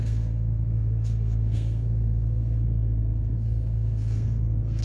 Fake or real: fake